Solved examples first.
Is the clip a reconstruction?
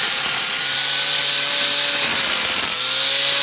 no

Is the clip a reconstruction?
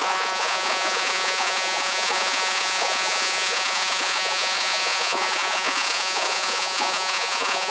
yes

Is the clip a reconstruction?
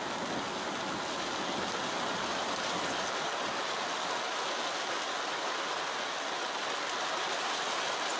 no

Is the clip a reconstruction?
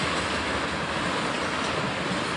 no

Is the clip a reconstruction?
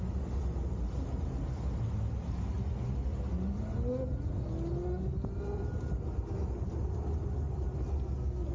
no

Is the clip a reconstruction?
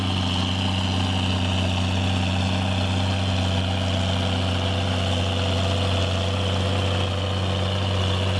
no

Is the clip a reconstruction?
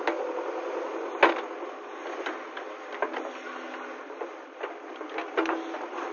no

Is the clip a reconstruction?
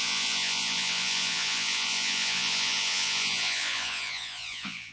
yes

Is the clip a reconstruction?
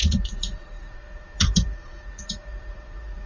yes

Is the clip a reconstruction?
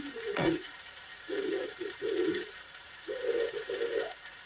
yes